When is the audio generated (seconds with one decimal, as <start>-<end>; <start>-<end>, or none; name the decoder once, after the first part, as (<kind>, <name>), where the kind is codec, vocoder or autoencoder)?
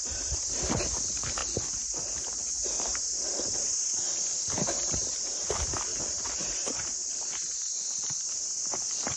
5.0-5.5 (vocoder, BigVGAN v2); 5.9-7.1